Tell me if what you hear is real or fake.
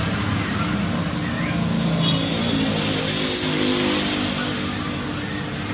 real